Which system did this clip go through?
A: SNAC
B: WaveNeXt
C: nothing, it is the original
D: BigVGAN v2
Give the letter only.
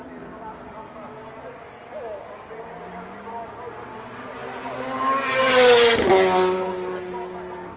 C